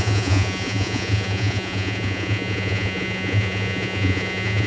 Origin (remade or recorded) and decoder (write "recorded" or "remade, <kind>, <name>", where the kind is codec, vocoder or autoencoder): remade, vocoder, Vocos